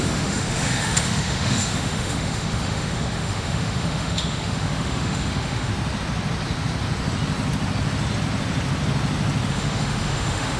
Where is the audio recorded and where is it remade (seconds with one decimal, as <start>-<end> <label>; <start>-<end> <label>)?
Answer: 0.0-5.7 remade; 5.7-9.5 recorded; 9.5-10.6 remade